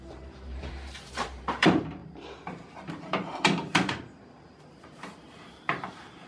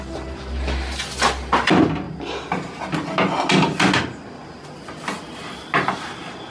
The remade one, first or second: first